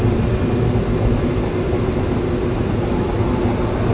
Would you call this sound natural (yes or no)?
yes